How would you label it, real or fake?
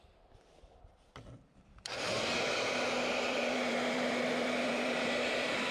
fake